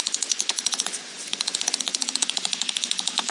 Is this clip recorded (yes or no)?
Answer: no